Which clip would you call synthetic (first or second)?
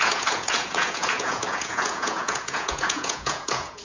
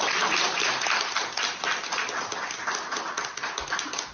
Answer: first